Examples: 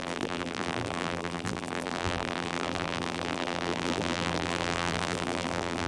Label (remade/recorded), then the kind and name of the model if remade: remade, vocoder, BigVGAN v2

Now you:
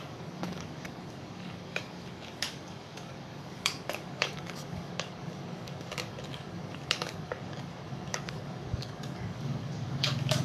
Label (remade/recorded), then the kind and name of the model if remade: remade, codec, DAC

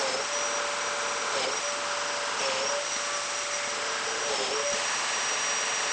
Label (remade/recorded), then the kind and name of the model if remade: recorded